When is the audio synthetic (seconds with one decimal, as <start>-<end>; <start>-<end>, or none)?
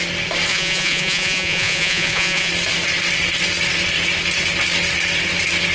0.5-2.5